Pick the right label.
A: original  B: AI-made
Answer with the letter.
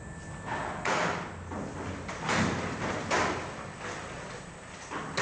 A